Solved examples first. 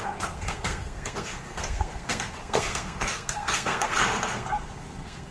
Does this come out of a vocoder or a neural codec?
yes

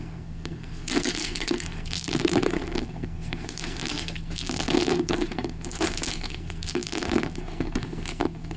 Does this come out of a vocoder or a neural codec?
yes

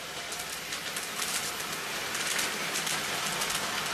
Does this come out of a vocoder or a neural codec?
no